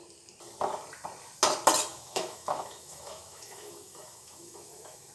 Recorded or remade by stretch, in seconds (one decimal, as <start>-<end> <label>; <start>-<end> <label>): 0.0-1.9 recorded; 1.9-5.1 remade